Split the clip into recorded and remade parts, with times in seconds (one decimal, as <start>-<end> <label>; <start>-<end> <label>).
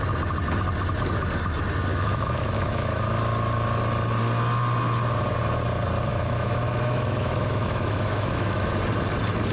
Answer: 0.0-1.9 recorded; 1.9-3.0 remade; 3.0-6.1 recorded; 6.1-8.7 remade; 8.7-9.5 recorded